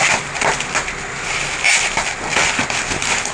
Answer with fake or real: real